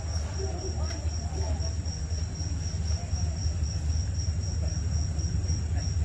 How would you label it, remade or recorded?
recorded